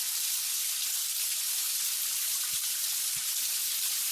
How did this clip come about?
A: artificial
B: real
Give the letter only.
B